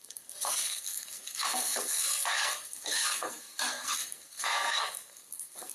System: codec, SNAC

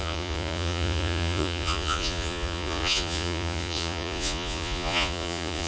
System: vocoder, Vocos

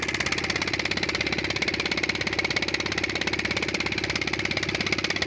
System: none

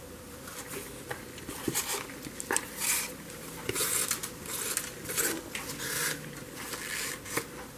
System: none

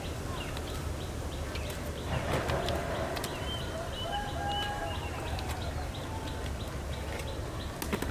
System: none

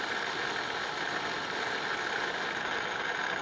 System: none